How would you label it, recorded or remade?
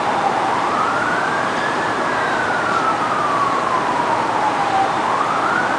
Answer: remade